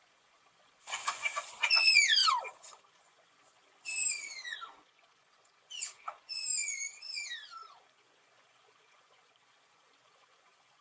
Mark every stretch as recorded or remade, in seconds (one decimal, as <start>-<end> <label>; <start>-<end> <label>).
0.0-10.8 remade